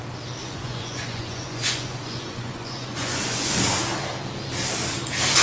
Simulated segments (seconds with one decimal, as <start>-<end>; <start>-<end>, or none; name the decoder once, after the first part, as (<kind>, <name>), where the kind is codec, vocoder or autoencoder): 0.4-3.6 (vocoder, Vocos)